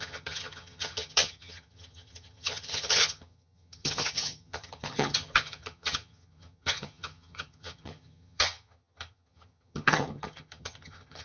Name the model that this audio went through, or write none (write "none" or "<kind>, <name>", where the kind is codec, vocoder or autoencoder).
vocoder, HiFi-GAN